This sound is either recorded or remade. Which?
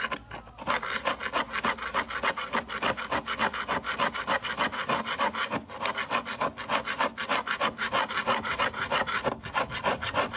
recorded